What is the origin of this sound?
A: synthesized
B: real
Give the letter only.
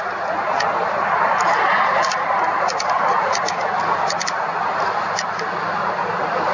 B